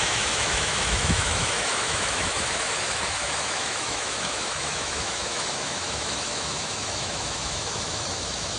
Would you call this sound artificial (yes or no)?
yes